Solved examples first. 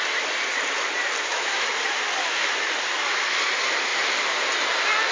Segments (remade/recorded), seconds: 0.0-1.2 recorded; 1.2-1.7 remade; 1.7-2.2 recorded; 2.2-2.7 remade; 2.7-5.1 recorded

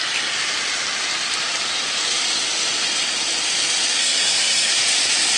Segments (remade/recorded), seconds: 0.0-4.0 recorded; 4.0-4.7 remade; 4.7-5.4 recorded

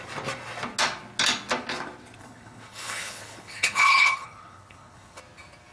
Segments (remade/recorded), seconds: 0.0-2.2 recorded; 2.2-5.2 remade; 5.2-5.7 recorded